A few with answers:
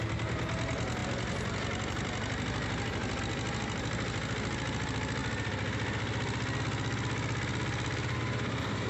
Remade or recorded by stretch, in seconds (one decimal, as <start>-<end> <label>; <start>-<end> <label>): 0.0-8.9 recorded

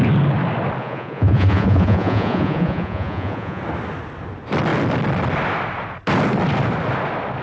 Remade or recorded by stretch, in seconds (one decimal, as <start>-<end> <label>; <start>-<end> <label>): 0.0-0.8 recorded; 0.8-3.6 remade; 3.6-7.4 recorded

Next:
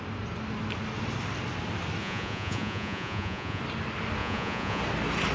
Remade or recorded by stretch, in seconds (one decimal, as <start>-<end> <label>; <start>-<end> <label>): 0.0-2.0 recorded; 2.0-3.6 remade; 3.6-4.2 recorded; 4.2-4.8 remade; 4.8-5.3 recorded